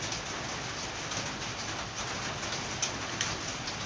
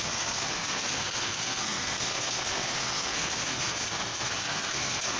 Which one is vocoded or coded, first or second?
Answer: second